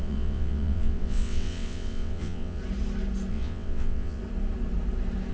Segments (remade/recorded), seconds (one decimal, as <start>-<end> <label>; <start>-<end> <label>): 0.0-2.6 remade; 2.6-3.3 recorded; 3.3-4.2 remade; 4.2-5.3 recorded